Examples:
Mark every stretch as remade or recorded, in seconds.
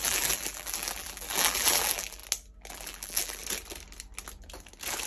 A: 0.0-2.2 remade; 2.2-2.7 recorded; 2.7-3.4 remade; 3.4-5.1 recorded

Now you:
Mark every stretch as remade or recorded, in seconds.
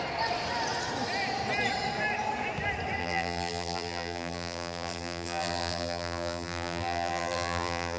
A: 0.0-3.0 recorded; 3.0-8.0 remade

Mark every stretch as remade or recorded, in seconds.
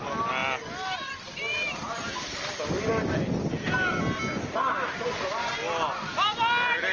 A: 0.0-6.9 recorded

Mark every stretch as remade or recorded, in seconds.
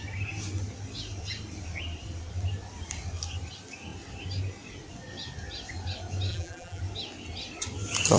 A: 0.0-6.3 recorded; 6.3-6.8 remade; 6.8-8.2 recorded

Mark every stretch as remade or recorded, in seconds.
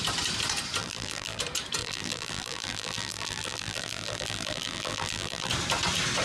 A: 0.0-0.8 recorded; 0.8-1.4 remade; 1.4-1.8 recorded; 1.8-5.5 remade; 5.5-6.2 recorded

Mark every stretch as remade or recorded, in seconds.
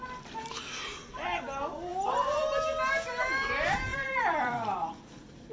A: 0.0-1.9 recorded; 1.9-2.4 remade; 2.4-3.9 recorded; 3.9-5.5 remade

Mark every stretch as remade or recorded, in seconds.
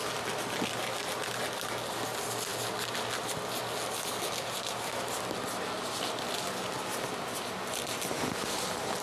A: 0.0-9.0 recorded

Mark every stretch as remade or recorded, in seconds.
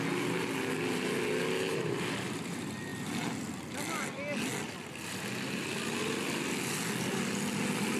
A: 0.0-1.7 recorded; 1.7-2.5 remade; 2.5-8.0 recorded